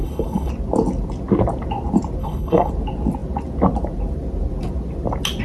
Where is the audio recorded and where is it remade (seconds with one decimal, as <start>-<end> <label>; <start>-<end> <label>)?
0.0-0.5 remade; 0.5-2.2 recorded; 2.2-2.7 remade; 2.7-5.4 recorded